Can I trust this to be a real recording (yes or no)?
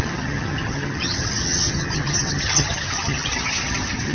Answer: no